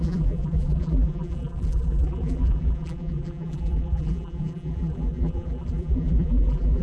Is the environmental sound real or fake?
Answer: fake